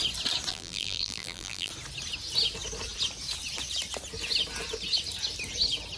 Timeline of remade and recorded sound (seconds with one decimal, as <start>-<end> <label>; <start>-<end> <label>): 0.0-0.5 recorded; 0.5-1.7 remade; 1.7-6.0 recorded